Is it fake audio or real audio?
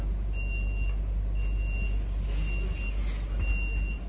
real